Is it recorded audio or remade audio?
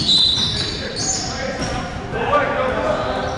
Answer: recorded